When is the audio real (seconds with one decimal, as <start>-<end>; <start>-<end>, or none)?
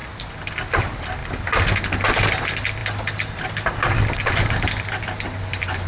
0.0-5.9